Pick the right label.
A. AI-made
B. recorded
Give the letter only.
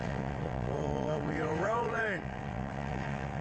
A